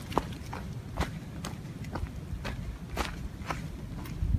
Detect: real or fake real